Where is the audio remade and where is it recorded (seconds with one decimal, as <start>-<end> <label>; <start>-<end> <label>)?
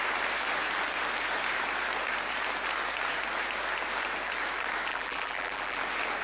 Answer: 0.0-4.9 recorded; 4.9-5.8 remade; 5.8-6.2 recorded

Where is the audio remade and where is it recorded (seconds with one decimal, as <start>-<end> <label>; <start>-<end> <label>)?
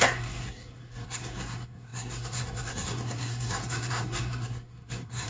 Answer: 0.0-5.3 remade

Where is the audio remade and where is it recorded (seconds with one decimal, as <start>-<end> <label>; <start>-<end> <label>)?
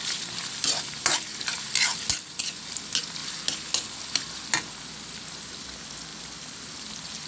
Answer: 0.0-7.3 recorded